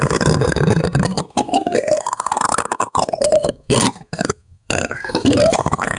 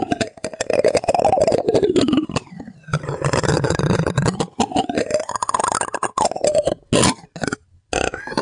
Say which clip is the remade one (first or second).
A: first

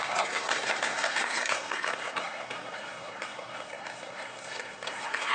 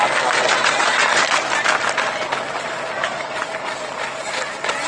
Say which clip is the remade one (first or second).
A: first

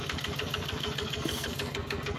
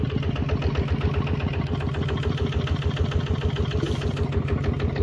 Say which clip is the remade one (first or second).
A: first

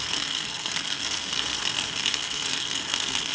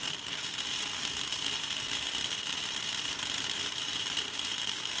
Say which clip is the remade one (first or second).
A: first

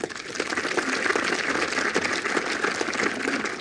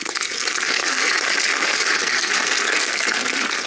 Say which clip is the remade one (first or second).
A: second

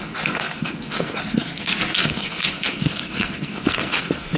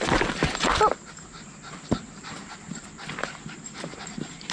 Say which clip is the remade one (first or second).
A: first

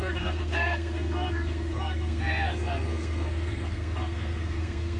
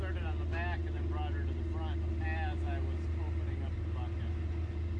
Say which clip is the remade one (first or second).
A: first